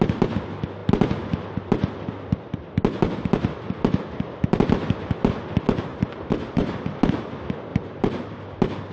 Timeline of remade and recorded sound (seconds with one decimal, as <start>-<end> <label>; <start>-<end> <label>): 0.0-5.9 recorded; 5.9-7.0 remade; 7.0-7.7 recorded; 7.7-8.3 remade; 8.3-8.9 recorded